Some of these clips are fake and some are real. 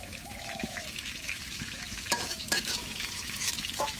fake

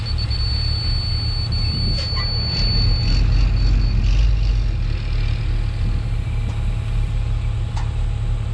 real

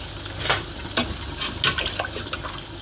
real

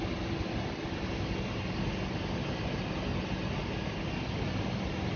real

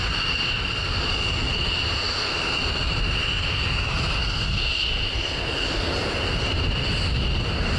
real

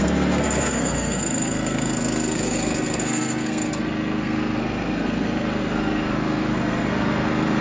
fake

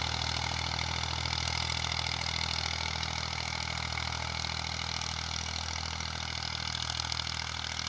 real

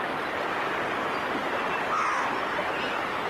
real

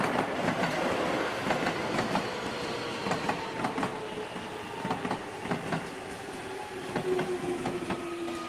real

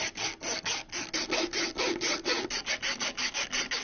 real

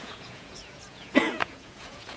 fake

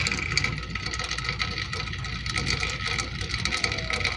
real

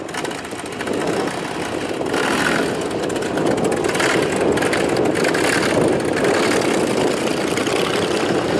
real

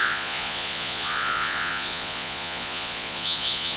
fake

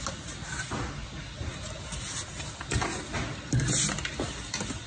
real